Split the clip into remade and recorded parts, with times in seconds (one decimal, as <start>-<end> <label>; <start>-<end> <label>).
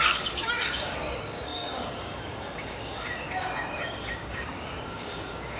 0.0-5.6 remade